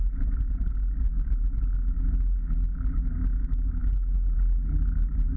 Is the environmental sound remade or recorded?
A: recorded